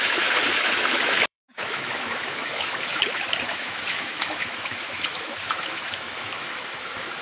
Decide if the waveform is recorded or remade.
remade